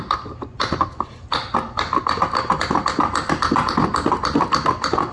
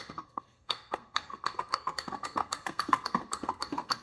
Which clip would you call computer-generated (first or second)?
second